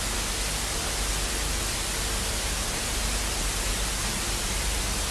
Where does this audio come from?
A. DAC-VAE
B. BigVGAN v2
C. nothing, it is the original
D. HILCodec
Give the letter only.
C